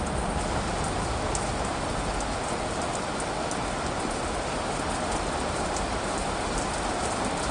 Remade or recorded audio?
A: recorded